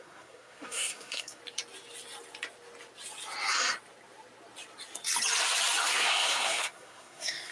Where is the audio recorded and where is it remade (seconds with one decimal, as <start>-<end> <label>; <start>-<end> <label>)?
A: 0.0-1.4 remade; 1.4-5.9 recorded; 5.9-7.5 remade